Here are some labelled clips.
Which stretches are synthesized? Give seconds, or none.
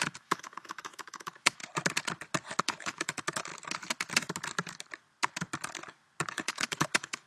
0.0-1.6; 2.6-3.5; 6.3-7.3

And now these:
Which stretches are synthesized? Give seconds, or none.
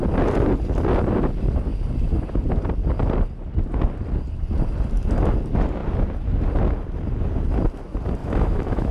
8.2-8.9